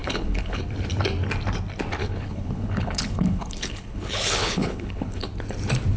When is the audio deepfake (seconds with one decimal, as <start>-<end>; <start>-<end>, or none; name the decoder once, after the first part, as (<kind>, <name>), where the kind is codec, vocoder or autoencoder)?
0.0-0.6 (codec, HILCodec); 2.0-5.3